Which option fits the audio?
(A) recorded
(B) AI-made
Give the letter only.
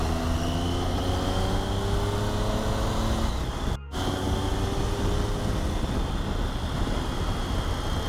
A